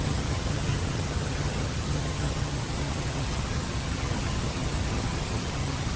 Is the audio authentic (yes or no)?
no